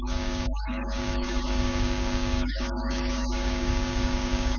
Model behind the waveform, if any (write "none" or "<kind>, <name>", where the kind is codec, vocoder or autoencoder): codec, DAC